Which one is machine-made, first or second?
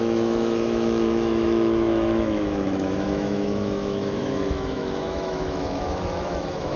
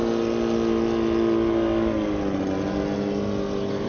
first